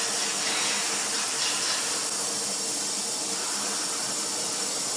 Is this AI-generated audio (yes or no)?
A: no